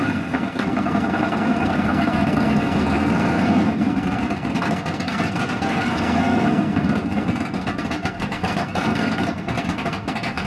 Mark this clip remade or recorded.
remade